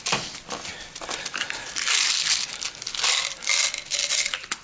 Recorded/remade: recorded